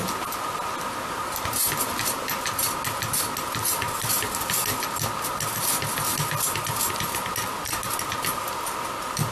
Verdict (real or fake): real